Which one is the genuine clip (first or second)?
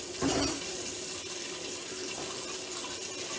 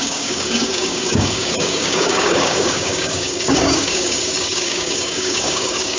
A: first